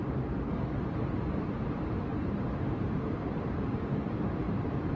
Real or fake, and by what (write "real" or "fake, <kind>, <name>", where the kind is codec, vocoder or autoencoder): fake, vocoder, BigVGAN v2